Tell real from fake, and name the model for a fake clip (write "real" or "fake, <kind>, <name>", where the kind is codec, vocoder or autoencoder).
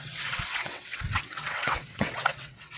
fake, vocoder, WaveNeXt